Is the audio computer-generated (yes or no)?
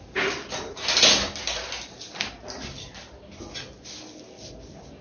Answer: no